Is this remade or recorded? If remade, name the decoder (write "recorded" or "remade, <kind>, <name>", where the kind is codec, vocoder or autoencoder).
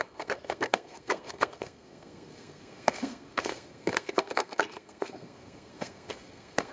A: remade, codec, SNAC